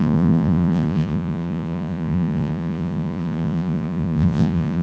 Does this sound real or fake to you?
fake